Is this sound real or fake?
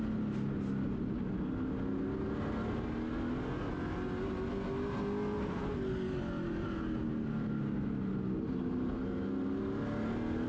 real